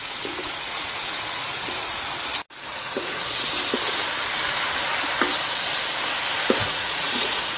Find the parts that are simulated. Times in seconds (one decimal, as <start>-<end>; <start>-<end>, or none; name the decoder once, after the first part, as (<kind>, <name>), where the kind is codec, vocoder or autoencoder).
0.0-2.1 (vocoder, Vocos); 2.7-3.5; 6.6-7.6